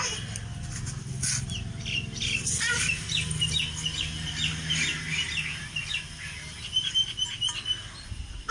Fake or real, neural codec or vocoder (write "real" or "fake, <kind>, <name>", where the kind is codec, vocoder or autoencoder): real